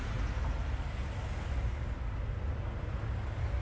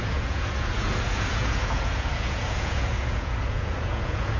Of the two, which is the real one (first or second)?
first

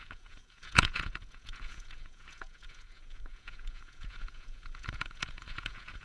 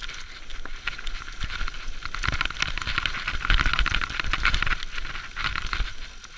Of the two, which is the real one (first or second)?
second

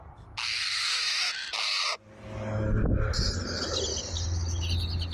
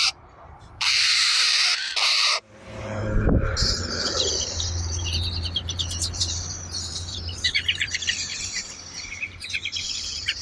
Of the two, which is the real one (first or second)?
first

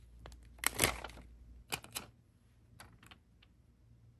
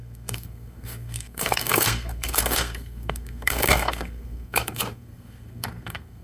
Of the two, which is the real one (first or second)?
first